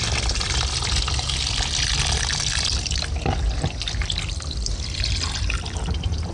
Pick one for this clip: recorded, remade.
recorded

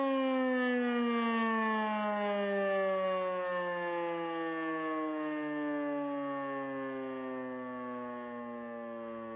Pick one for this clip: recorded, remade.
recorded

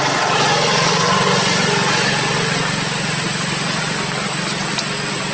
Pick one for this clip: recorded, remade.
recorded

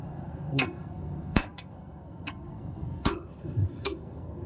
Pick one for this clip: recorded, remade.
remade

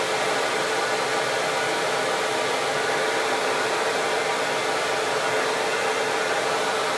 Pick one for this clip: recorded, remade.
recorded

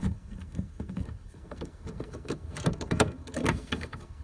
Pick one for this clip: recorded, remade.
remade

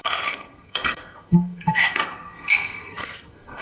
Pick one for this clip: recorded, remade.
remade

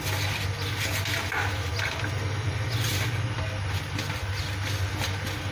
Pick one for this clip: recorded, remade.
recorded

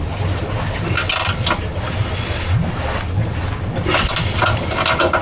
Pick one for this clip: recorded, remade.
recorded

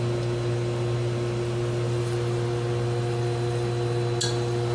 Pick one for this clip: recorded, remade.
recorded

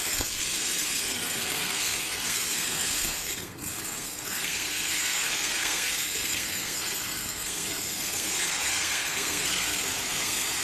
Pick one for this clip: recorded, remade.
remade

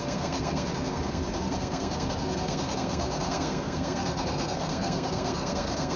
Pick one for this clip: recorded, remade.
remade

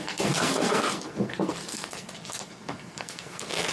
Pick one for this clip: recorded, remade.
remade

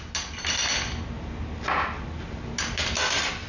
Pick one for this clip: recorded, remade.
recorded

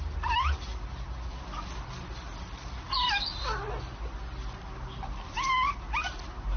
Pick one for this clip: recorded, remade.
recorded